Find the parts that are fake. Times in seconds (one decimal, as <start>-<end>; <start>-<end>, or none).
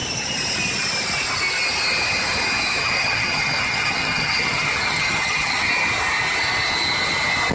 2.8-5.7